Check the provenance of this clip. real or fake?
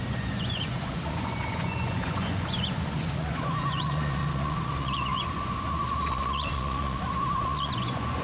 fake